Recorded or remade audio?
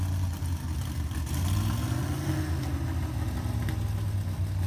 recorded